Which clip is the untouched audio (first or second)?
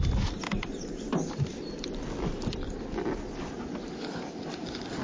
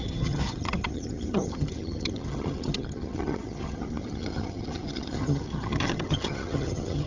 first